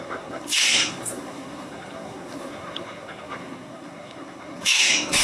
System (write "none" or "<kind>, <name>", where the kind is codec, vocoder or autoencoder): codec, SNAC